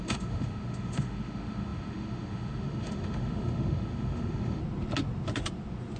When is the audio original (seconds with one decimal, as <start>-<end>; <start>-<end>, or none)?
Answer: 4.6-6.0